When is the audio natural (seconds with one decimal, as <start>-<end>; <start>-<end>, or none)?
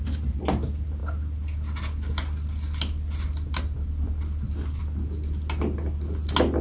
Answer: 0.0-6.6